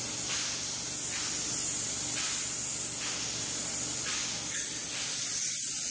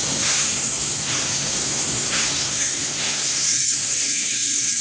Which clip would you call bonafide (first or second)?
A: first